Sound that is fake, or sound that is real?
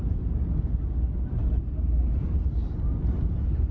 real